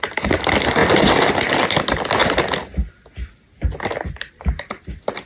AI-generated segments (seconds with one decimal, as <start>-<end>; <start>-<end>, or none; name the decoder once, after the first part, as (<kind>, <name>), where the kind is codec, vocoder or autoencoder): none